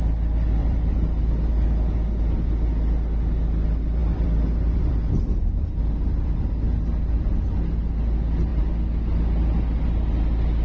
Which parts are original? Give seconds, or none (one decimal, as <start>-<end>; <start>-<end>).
0.0-0.6; 1.5-4.0; 6.5-10.6